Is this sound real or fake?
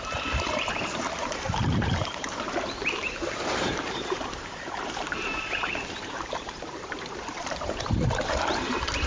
fake